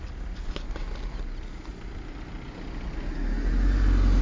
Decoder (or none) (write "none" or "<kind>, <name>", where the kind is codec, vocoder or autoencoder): none